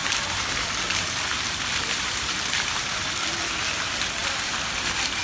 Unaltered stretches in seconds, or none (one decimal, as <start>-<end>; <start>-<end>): 3.1-4.2